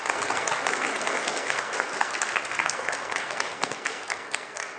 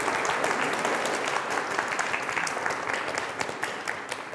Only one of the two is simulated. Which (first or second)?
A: first